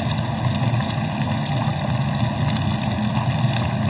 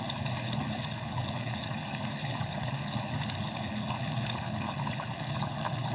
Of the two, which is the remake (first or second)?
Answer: second